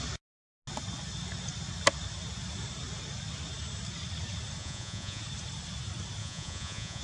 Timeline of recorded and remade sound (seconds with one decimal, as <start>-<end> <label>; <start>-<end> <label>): 0.0-4.6 recorded; 4.6-5.2 remade; 5.2-6.2 recorded; 6.2-7.0 remade